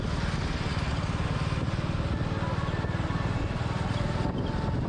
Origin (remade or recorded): recorded